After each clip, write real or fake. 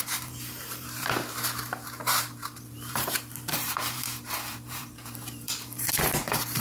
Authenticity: fake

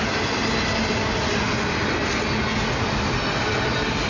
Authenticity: real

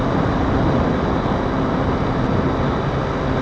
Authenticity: real